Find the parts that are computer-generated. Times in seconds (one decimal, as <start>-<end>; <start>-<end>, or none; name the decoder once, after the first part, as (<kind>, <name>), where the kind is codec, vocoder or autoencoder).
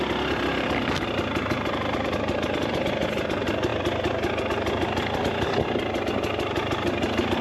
none